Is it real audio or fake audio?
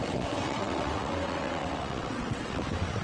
fake